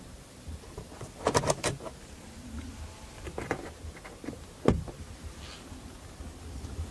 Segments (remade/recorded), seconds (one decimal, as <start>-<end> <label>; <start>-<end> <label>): 0.0-6.9 recorded